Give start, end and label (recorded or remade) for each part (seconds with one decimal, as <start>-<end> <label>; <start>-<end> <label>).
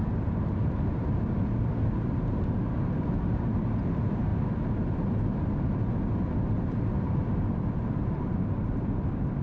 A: 0.0-4.3 remade; 4.3-8.2 recorded; 8.2-9.4 remade